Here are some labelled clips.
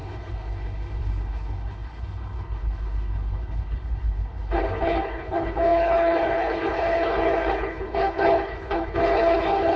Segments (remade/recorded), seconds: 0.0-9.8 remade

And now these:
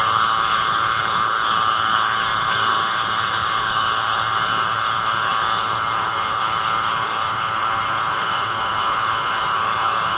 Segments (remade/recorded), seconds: 0.0-10.2 remade